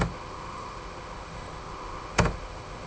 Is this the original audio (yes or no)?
no